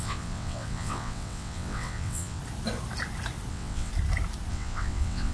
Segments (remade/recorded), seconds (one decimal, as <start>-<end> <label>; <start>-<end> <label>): 0.0-2.4 remade; 2.4-3.5 recorded; 3.5-3.9 remade; 3.9-4.5 recorded; 4.5-5.3 remade